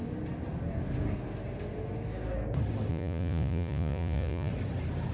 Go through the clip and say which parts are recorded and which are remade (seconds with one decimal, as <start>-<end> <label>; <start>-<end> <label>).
0.0-2.9 recorded; 2.9-4.5 remade; 4.5-5.1 recorded